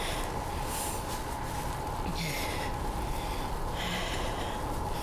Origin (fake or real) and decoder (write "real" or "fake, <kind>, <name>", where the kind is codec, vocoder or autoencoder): real